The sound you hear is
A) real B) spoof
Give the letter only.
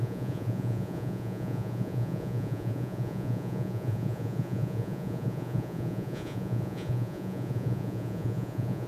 B